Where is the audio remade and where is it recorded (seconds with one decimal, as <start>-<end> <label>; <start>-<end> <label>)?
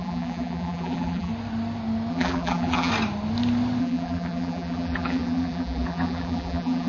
0.0-1.3 remade; 1.3-2.1 recorded; 2.1-2.9 remade; 2.9-3.8 recorded; 3.8-6.9 remade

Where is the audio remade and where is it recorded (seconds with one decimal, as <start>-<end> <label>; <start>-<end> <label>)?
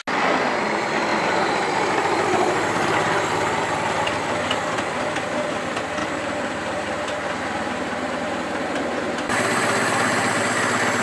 0.0-6.0 recorded; 6.0-10.4 remade; 10.4-11.0 recorded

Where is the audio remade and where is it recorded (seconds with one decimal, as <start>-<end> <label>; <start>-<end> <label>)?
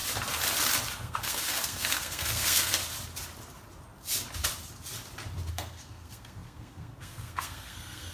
0.0-1.0 recorded; 1.0-2.8 remade; 2.8-5.5 recorded; 5.5-8.1 remade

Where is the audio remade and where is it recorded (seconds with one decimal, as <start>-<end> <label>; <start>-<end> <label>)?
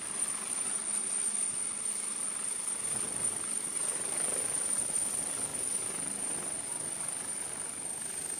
0.0-8.4 recorded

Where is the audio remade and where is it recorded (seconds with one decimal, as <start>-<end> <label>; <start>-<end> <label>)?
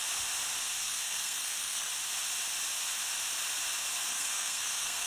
0.0-0.8 recorded; 0.8-1.9 remade; 1.9-4.1 recorded; 4.1-5.1 remade